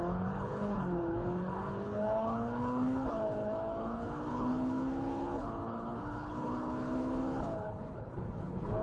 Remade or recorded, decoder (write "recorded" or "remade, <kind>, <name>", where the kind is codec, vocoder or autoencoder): remade, codec, HILCodec